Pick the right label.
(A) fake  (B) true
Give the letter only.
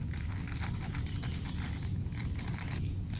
B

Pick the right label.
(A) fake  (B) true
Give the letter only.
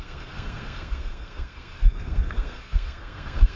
A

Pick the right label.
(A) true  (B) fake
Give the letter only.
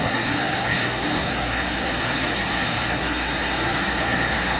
B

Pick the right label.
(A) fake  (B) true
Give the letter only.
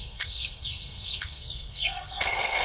A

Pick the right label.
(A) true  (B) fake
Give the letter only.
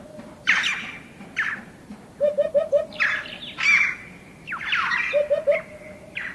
A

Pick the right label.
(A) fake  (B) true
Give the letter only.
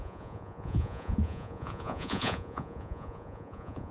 A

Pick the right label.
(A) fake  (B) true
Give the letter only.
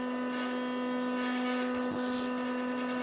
B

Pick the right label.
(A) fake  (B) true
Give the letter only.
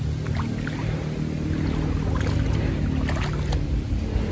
B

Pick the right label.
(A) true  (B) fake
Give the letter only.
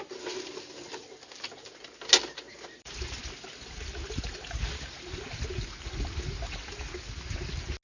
A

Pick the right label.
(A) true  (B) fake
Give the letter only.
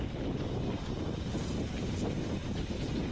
A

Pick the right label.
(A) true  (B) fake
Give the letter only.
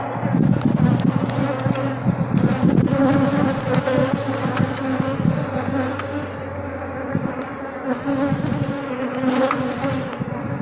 A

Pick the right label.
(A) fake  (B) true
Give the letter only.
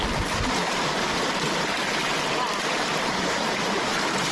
B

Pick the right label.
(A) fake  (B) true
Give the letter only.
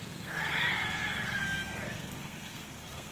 A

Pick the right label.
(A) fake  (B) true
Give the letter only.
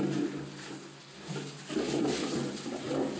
B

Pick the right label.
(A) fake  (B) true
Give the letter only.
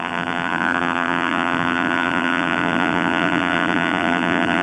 A